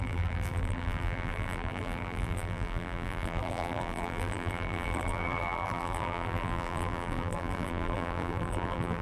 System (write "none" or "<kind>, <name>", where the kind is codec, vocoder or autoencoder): vocoder, BigVGAN v2